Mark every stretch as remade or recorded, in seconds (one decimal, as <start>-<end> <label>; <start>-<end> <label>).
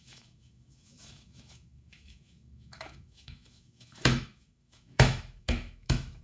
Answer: 0.0-6.2 remade